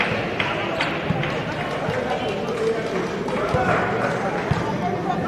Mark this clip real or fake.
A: real